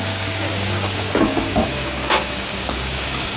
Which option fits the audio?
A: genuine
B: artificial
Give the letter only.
B